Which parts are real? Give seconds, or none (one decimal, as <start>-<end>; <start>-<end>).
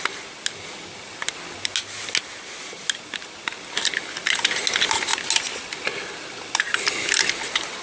0.0-7.8